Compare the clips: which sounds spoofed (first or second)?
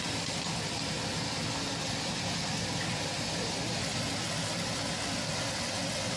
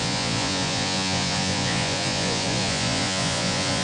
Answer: second